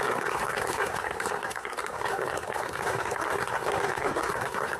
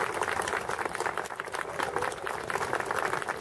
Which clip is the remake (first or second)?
first